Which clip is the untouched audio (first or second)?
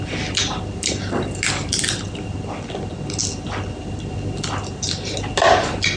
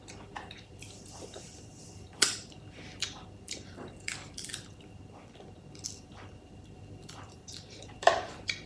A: first